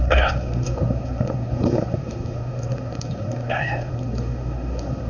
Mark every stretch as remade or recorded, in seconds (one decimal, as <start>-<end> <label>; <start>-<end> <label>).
0.0-5.1 remade